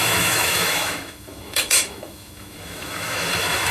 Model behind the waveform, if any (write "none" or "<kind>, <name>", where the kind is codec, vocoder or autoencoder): autoencoder, DAC-VAE